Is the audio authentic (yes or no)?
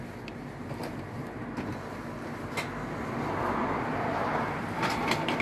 yes